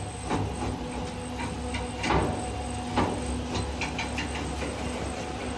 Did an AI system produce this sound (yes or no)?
no